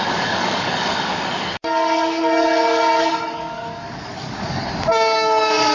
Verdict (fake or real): fake